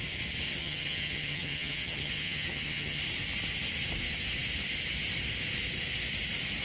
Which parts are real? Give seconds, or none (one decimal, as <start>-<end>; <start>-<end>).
0.0-0.6; 3.0-6.6